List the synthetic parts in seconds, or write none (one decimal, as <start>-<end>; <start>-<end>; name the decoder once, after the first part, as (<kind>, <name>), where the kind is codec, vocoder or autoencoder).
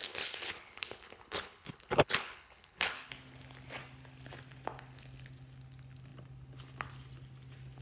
0.0-3.1 (codec, HILCodec)